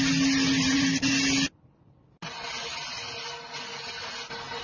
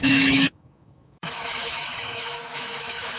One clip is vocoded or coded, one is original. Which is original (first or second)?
first